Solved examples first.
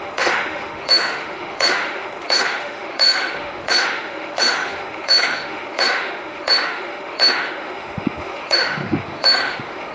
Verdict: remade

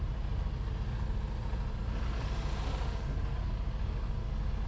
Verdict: recorded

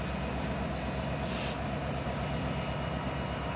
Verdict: recorded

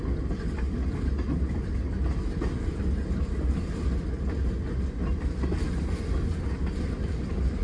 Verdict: recorded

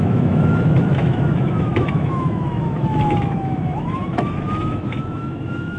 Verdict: remade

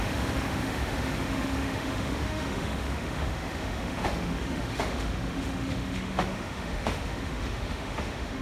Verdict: remade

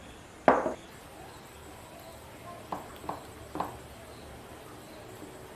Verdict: recorded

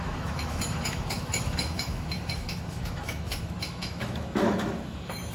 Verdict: remade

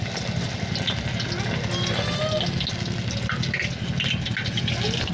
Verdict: recorded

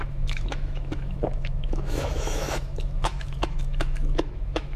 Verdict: remade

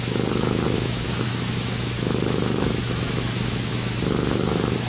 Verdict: remade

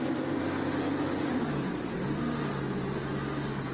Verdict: recorded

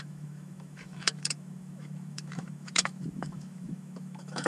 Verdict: remade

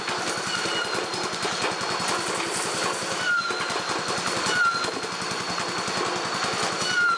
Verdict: recorded